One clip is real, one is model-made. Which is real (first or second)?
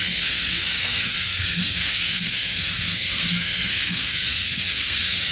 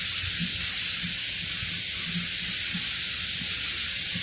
second